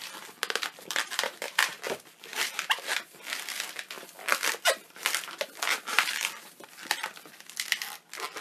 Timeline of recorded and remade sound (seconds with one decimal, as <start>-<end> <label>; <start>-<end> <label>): 0.0-1.7 remade; 1.7-2.3 recorded; 2.3-8.4 remade